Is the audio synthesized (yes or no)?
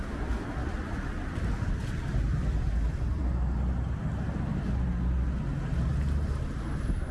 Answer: no